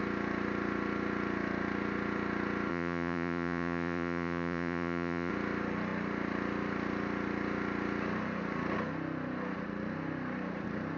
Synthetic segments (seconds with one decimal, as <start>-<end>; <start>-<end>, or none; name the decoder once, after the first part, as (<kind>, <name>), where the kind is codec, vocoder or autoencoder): 2.7-5.3 (vocoder, Vocos)